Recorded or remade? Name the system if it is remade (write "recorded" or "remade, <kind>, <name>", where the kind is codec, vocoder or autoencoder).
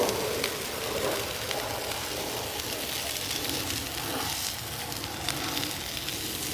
recorded